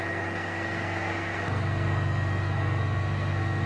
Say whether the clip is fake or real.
fake